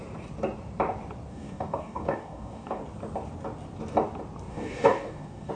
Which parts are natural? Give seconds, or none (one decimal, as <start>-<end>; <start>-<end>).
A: 0.0-1.3; 2.8-4.5